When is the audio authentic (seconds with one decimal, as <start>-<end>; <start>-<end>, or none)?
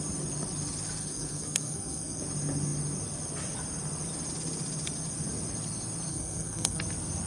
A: 0.0-1.0; 2.2-6.1; 6.8-7.3